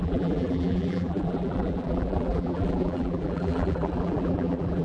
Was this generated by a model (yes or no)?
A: yes